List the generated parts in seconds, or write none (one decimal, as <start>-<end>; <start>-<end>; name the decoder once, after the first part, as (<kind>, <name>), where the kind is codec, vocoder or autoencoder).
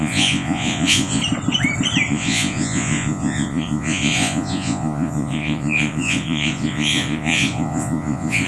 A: 0.0-1.2 (vocoder, Vocos); 2.1-8.5